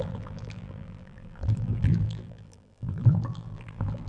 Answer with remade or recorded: remade